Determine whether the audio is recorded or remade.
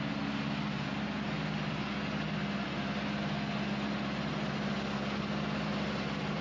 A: recorded